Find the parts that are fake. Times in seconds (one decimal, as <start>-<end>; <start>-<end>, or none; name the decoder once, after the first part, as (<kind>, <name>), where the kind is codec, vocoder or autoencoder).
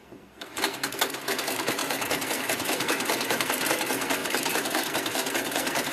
0.0-5.9 (codec, SNAC)